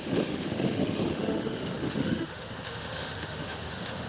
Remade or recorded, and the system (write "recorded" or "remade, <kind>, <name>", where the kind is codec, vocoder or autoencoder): remade, autoencoder, DAC-VAE